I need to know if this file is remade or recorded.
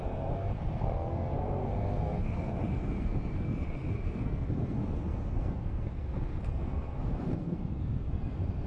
remade